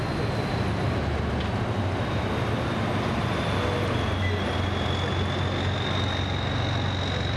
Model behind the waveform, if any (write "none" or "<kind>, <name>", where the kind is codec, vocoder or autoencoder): none